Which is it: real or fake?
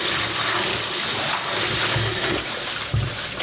real